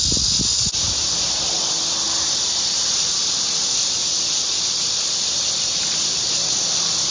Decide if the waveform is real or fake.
real